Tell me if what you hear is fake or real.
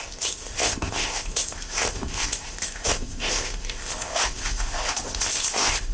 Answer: fake